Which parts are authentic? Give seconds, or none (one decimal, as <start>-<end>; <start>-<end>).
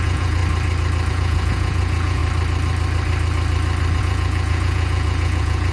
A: 0.4-1.1; 2.2-4.0